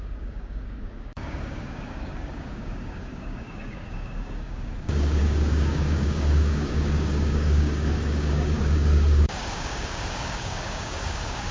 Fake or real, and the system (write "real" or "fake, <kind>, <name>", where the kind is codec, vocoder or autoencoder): fake, codec, DAC